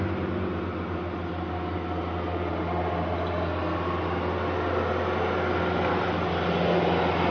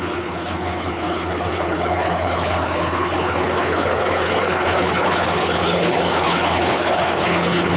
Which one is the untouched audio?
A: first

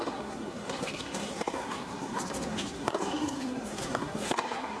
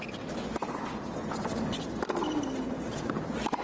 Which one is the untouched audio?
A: second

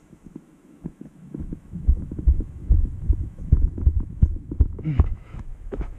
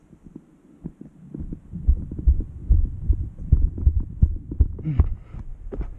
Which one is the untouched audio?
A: second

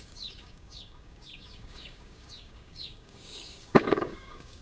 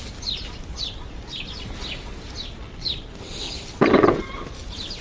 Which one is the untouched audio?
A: second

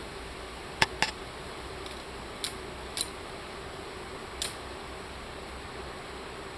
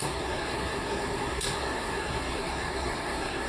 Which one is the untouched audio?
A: first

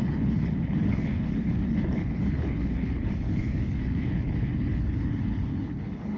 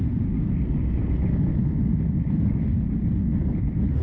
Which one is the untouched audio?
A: second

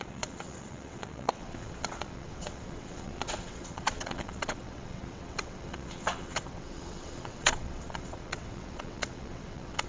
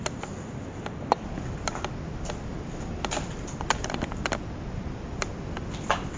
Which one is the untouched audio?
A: second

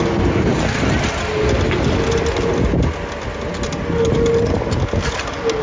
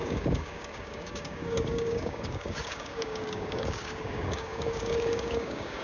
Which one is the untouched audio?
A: first